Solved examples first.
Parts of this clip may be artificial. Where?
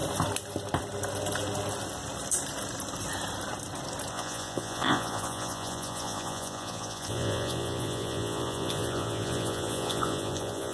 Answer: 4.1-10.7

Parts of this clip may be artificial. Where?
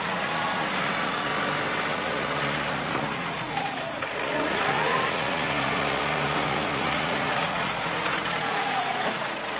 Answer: 0.0-1.3; 1.9-9.6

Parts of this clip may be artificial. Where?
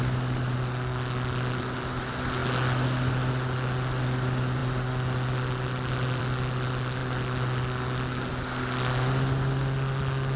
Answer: none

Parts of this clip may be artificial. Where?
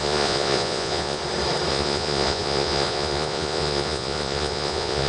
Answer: 0.0-1.2; 1.7-5.1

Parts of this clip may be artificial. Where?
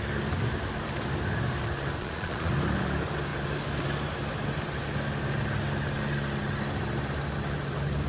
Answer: 2.0-2.5